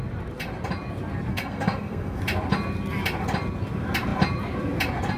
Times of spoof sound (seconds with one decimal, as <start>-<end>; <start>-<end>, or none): 1.3-2.2